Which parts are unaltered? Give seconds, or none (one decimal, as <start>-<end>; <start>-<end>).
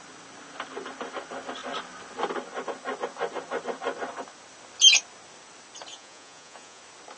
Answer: 0.0-5.9; 6.8-7.2